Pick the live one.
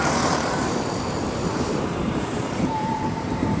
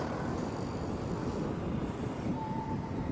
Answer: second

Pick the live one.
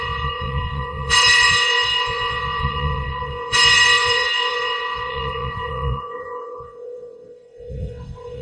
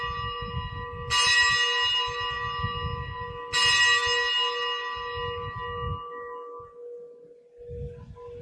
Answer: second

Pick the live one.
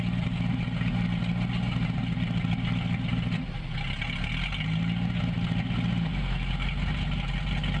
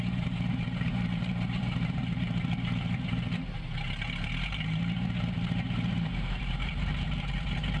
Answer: first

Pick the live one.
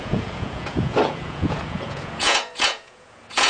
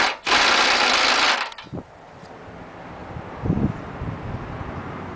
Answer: second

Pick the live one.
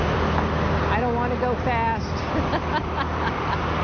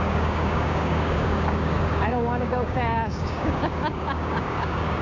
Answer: first